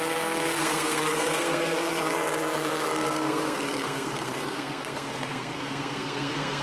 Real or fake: fake